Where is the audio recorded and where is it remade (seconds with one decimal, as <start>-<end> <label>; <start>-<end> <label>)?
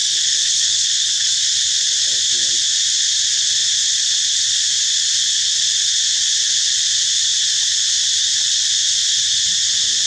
0.0-1.4 remade; 1.4-10.1 recorded